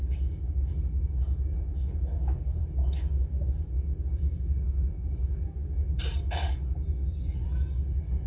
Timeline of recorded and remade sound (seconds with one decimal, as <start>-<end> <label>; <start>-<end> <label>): 0.0-8.3 recorded